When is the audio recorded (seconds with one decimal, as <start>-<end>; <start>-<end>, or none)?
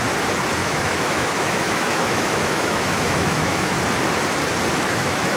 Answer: 0.0-0.6; 3.8-4.7